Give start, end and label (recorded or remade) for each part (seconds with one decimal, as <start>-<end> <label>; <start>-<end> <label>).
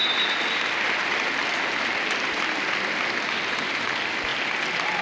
0.0-5.0 recorded